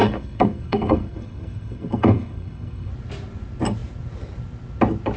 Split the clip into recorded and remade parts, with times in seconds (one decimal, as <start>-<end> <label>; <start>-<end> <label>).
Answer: 0.0-2.9 remade; 2.9-5.2 recorded